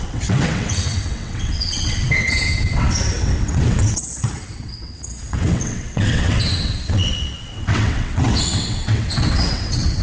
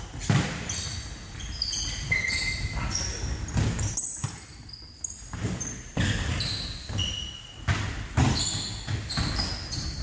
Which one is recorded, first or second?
second